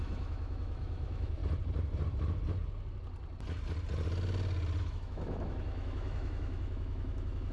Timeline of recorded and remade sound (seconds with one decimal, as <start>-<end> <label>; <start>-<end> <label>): 0.0-1.4 remade; 1.4-4.8 recorded; 4.8-7.5 remade